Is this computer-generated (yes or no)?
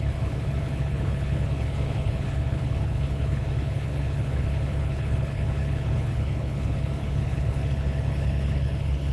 yes